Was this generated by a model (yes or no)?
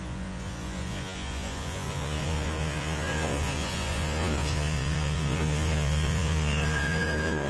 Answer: yes